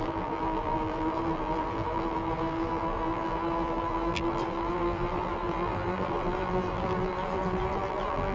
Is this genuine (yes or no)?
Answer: no